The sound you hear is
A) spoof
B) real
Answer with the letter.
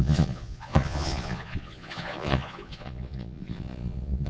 A